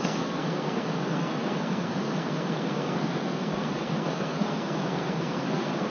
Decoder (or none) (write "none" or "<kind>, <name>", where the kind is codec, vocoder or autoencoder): codec, SNAC